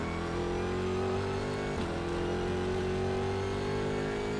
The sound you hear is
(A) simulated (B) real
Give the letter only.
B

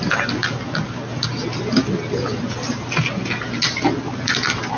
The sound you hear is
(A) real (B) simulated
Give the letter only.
A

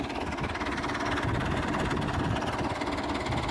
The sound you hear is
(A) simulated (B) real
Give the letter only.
B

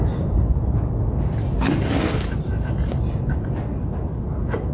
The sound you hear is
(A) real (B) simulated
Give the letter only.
A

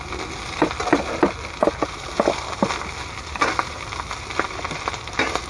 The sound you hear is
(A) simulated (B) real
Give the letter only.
B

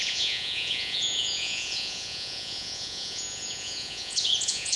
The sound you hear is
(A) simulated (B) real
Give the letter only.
A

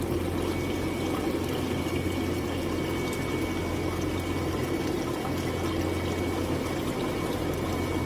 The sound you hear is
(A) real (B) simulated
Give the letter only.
A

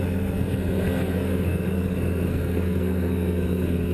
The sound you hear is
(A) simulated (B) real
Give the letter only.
A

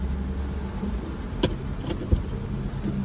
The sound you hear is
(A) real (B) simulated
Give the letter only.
A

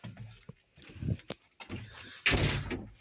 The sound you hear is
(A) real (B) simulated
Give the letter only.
A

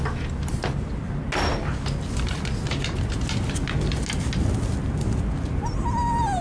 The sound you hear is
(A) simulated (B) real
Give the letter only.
B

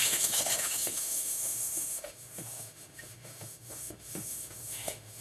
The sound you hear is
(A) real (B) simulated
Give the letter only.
B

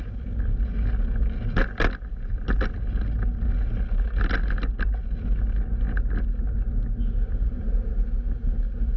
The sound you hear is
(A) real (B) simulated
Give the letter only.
A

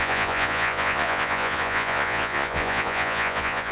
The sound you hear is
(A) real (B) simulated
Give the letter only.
B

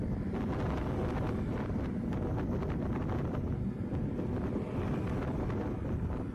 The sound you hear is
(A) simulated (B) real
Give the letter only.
B